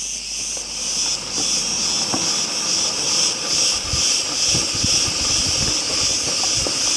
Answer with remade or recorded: remade